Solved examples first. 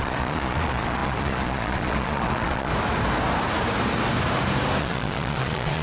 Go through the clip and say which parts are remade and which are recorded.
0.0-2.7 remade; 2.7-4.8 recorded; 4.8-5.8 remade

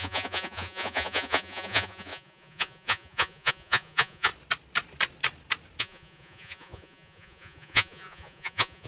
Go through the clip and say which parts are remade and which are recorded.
0.0-4.3 remade; 4.3-5.8 recorded; 5.8-8.9 remade

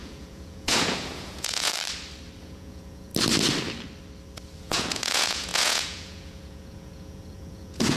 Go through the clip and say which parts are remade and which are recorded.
0.0-1.7 remade; 1.7-2.4 recorded; 2.4-3.1 remade; 3.1-4.6 recorded; 4.6-8.0 remade

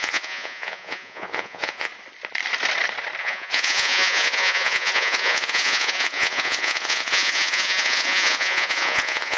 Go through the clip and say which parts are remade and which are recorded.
0.0-1.9 remade; 1.9-3.2 recorded; 3.2-9.4 remade

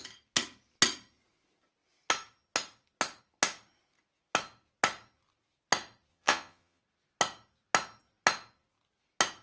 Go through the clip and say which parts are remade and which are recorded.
0.0-6.1 recorded; 6.1-6.8 remade; 6.8-9.4 recorded

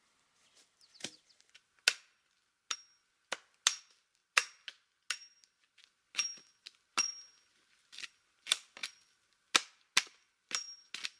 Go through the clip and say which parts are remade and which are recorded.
0.0-11.2 recorded

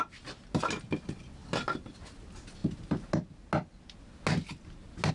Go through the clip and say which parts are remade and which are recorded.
0.0-5.1 recorded